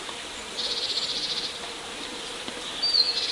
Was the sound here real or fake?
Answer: real